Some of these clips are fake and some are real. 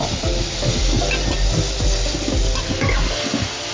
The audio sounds real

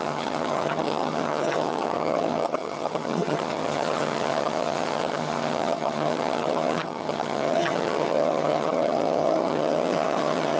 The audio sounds fake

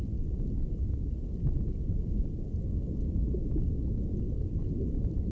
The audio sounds real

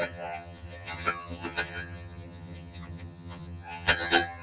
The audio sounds fake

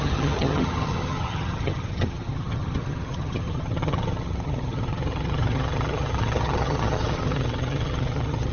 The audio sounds fake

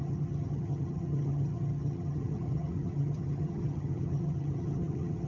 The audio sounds fake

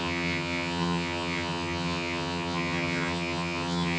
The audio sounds fake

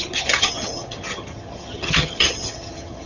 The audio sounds fake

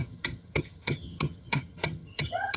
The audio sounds fake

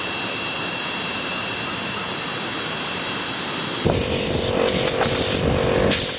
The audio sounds real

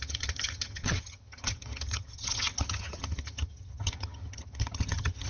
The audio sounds fake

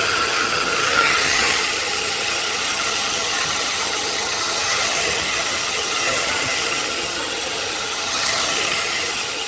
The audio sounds fake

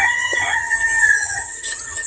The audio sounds fake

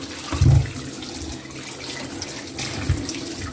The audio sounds real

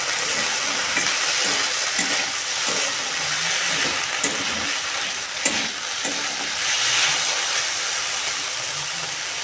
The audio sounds real